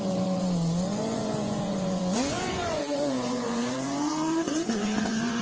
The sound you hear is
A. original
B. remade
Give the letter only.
B